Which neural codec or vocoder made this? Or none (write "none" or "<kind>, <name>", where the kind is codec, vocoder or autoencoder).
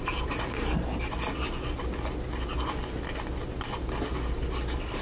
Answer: none